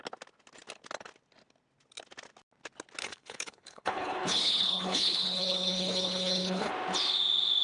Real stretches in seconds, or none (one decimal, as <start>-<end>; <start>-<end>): 0.0-3.0; 6.7-7.6